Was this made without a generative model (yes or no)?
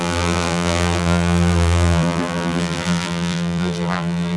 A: no